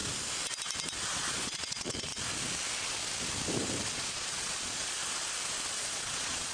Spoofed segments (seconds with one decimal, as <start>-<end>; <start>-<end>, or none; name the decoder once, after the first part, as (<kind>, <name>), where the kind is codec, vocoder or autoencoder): 1.1-2.1 (vocoder, Vocos); 3.9-5.0; 5.7-6.5